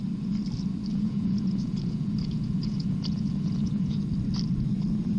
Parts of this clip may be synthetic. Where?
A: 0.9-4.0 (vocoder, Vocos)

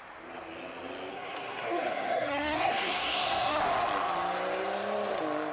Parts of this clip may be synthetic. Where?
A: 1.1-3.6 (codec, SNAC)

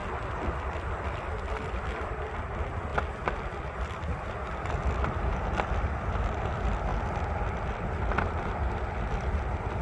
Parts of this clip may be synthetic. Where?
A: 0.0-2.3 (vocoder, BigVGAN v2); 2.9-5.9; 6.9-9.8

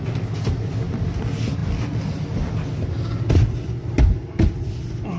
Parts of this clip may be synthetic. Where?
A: none